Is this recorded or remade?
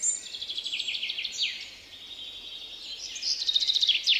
recorded